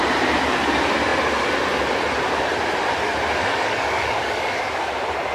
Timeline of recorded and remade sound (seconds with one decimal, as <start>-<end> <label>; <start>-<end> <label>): 0.0-3.4 recorded; 3.4-4.7 remade; 4.7-5.3 recorded